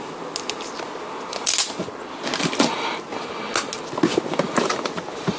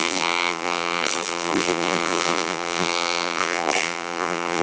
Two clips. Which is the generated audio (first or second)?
second